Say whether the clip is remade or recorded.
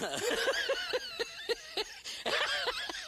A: recorded